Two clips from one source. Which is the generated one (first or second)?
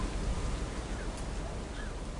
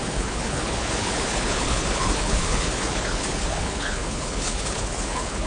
second